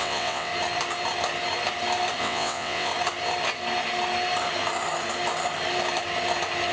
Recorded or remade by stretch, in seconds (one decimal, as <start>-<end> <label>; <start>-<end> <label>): 0.0-0.5 remade; 0.5-2.2 recorded; 2.2-2.9 remade; 2.9-6.7 recorded